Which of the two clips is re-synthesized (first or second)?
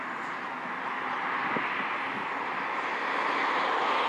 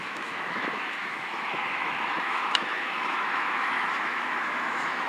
second